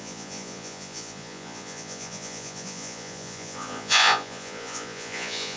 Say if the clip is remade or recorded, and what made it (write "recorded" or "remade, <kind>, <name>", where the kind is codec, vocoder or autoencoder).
remade, vocoder, Vocos